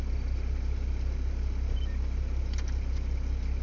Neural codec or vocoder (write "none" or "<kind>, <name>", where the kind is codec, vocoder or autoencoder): none